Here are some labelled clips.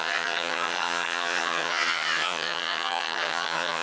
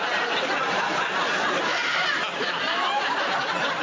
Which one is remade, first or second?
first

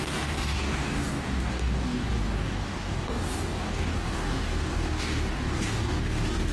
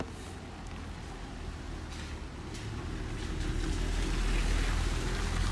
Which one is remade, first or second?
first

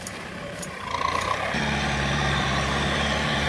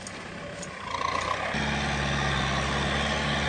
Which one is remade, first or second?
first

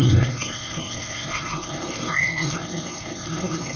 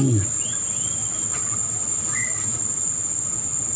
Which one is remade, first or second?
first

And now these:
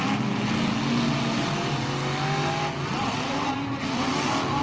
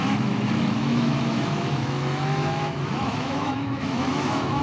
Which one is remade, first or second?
second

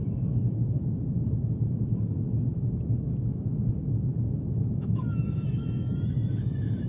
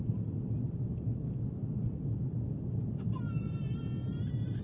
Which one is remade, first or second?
first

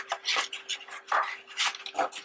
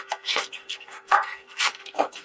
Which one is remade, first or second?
second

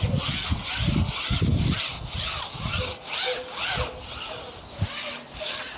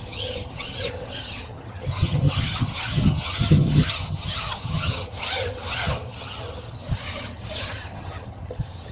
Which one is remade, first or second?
second